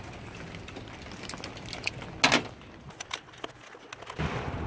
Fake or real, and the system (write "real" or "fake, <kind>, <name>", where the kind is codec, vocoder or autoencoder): real